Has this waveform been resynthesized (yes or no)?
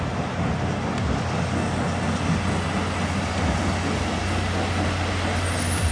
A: no